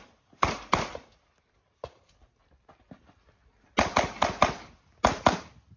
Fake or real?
real